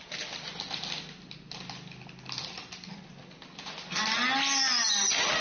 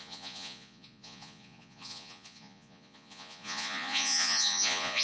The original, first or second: first